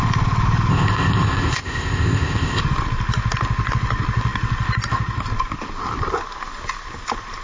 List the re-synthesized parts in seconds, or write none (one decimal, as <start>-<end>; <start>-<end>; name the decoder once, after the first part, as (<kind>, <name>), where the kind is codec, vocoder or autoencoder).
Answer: 0.7-2.6 (codec, ZipCodec)